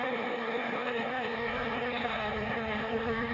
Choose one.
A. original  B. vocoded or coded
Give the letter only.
B